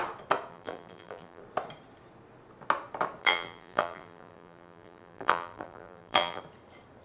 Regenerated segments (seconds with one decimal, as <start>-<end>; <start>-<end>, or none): 0.5-1.4; 3.2-6.4